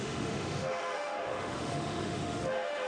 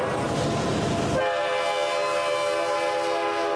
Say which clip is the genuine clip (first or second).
second